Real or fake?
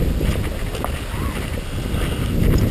real